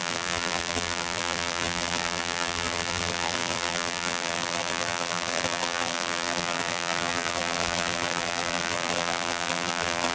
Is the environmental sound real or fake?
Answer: fake